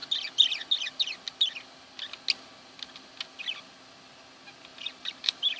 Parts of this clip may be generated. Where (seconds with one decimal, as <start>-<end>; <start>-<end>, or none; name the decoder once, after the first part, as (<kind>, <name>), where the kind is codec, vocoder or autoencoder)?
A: 4.7-5.6 (vocoder, BigVGAN v2)